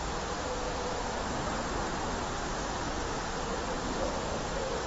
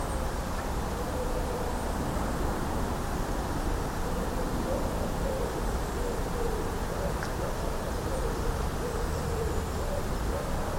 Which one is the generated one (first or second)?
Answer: second